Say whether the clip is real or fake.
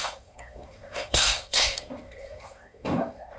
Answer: fake